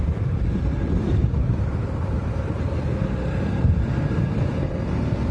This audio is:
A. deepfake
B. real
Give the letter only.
A